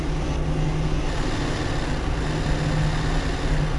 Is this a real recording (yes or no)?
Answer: yes